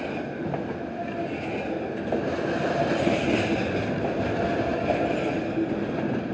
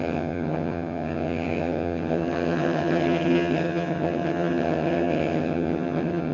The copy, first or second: second